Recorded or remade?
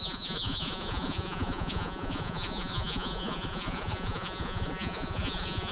remade